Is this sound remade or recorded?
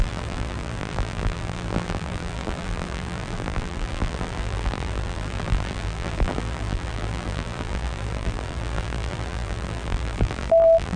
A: remade